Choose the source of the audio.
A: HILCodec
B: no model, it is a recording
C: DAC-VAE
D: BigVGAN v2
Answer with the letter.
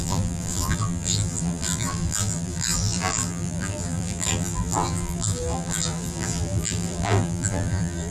D